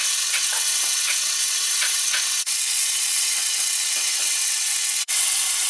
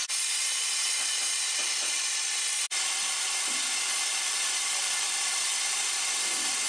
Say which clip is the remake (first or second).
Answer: first